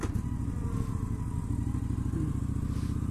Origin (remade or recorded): recorded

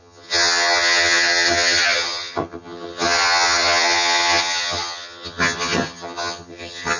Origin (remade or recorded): remade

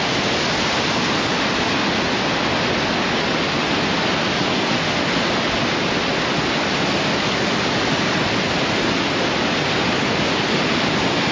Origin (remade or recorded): recorded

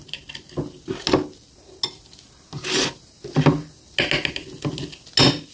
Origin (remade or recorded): recorded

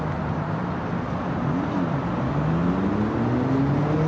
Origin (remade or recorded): recorded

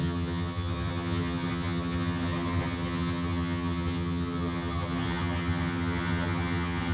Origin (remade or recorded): remade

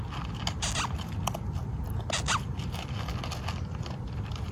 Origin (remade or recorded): recorded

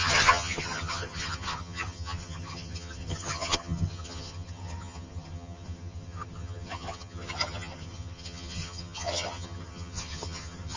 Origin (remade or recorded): remade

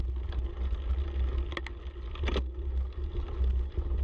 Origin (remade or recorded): recorded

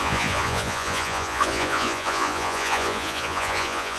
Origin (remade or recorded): remade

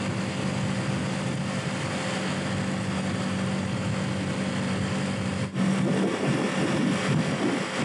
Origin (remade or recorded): recorded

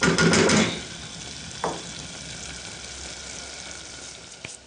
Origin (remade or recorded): recorded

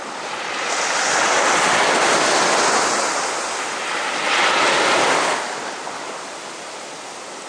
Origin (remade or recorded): recorded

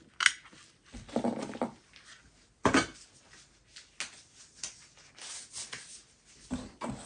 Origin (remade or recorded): recorded